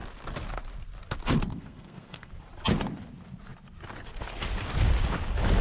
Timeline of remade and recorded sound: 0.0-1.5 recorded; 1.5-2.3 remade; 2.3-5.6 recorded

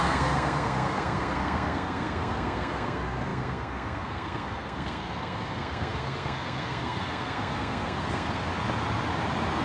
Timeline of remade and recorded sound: 0.0-8.5 remade; 8.5-9.6 recorded

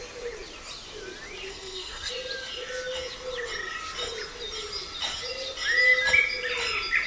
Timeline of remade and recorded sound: 0.0-1.5 recorded; 1.5-2.1 remade; 2.1-7.1 recorded

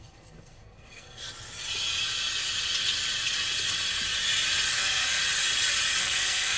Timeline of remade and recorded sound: 0.0-1.2 remade; 1.2-4.7 recorded; 4.7-5.2 remade; 5.2-6.0 recorded; 6.0-6.6 remade

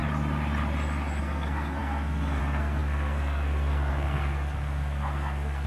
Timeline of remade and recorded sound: 0.0-1.2 recorded; 1.2-5.7 remade